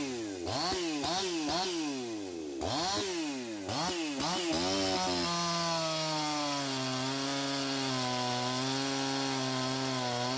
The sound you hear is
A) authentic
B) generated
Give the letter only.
A